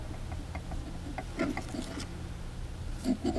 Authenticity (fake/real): real